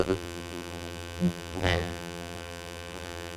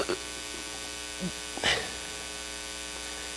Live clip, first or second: second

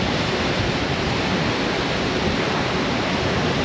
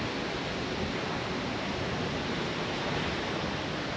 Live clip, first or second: second